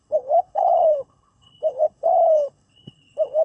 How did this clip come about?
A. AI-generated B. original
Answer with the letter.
A